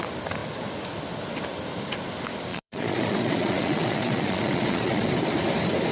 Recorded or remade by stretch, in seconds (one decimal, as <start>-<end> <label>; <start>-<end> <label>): 0.0-2.5 recorded; 2.5-5.1 remade; 5.1-5.9 recorded